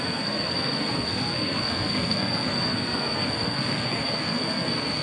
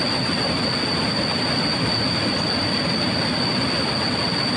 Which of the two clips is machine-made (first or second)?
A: first